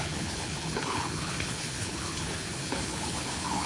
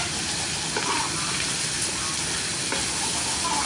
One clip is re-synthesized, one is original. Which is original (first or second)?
second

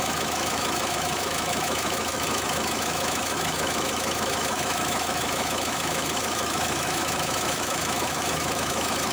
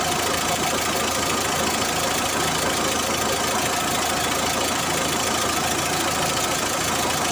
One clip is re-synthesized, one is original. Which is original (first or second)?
second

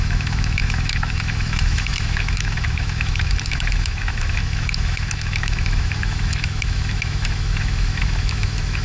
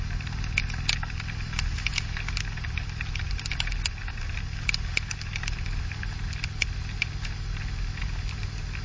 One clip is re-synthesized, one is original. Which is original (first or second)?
second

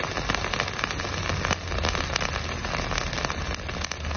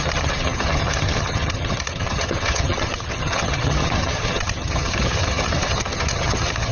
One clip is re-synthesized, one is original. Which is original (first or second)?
first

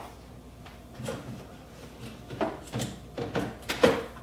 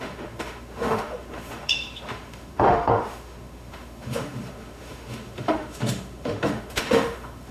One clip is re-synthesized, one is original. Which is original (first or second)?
first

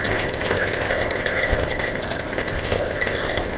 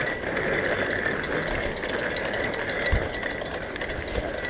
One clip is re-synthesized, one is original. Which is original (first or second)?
second